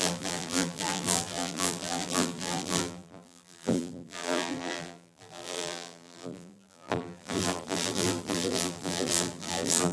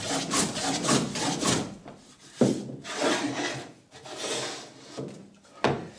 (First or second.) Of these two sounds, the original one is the second